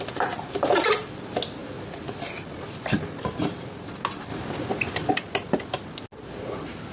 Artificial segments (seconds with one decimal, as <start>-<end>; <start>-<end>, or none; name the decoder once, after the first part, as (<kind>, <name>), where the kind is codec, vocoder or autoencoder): none

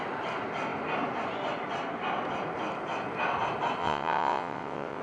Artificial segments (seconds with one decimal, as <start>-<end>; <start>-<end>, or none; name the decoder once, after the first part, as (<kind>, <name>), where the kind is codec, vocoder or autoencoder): 3.8-5.0 (vocoder, WaveNeXt)

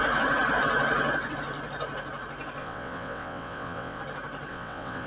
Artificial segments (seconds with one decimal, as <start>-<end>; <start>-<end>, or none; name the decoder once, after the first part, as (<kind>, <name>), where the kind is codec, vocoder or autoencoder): 2.6-4.0 (vocoder, WaveNeXt); 4.5-5.1

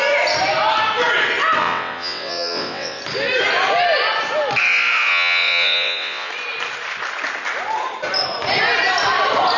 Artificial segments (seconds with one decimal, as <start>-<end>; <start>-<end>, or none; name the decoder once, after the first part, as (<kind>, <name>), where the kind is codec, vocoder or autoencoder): 1.6-3.0 (vocoder, WaveNeXt); 5.1-6.3